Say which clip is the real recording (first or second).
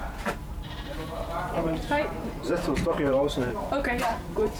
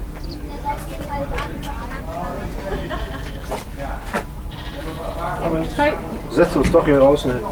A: second